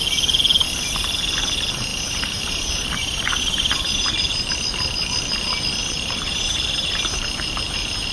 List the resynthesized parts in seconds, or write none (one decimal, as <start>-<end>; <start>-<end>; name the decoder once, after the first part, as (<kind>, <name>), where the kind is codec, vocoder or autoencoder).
1.9-4.5 (vocoder, BigVGAN v2); 5.8-7.5